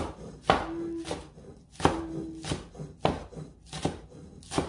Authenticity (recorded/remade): recorded